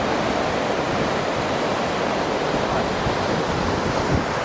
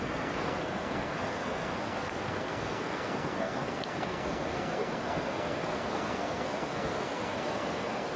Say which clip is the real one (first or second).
first